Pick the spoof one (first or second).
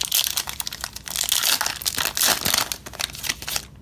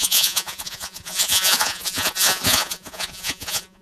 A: second